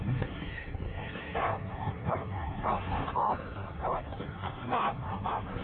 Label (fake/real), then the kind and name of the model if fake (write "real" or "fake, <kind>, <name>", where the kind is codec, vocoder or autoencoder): fake, codec, SNAC